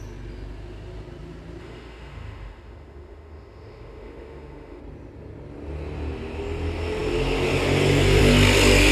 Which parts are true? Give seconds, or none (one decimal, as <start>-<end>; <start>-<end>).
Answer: 0.0-1.6; 4.8-8.9

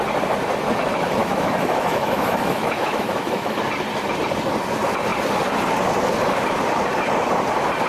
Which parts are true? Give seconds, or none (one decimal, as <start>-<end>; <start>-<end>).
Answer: 0.0-1.2; 3.6-7.9